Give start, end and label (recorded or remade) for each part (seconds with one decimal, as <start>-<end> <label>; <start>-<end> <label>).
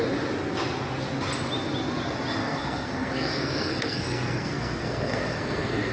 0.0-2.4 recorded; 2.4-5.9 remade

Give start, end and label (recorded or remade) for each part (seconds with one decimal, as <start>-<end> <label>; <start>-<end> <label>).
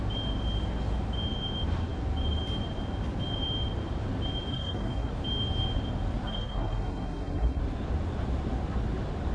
0.0-4.5 recorded; 4.5-5.1 remade; 5.1-6.3 recorded; 6.3-7.6 remade; 7.6-9.3 recorded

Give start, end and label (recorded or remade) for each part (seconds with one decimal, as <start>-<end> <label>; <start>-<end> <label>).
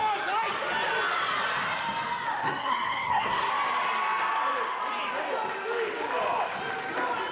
0.0-2.4 recorded; 2.4-3.5 remade; 3.5-7.3 recorded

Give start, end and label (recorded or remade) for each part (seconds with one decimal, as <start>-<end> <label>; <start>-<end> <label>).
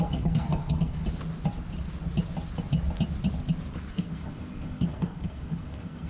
0.0-1.0 remade; 1.0-3.9 recorded; 3.9-6.1 remade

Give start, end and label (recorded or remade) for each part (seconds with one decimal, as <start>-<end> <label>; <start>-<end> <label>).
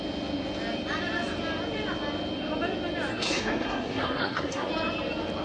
0.0-3.1 recorded; 3.1-4.7 remade; 4.7-5.4 recorded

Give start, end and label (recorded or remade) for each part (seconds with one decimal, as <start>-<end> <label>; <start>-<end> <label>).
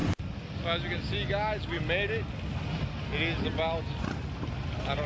0.0-5.1 recorded